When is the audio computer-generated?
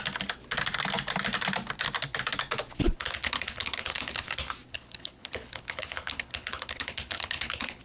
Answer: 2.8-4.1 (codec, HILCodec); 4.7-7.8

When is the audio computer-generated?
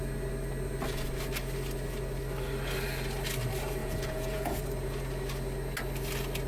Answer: 3.8-4.6 (vocoder, Vocos)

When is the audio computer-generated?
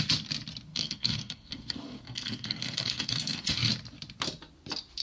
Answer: 0.7-3.7 (codec, SNAC)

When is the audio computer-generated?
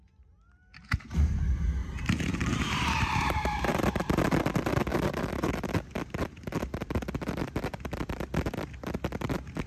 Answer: 1.8-4.2 (vocoder, BigVGAN v2); 4.9-5.6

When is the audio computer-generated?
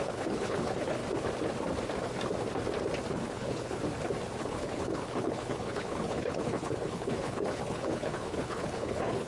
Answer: 0.0-1.0 (codec, HILCodec); 3.1-3.8; 4.4-9.3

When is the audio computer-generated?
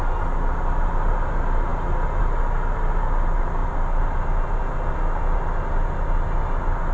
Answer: none